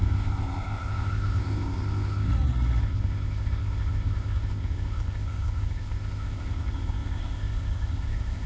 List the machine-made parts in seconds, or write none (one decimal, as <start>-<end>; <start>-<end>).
0.0-2.3; 2.8-8.5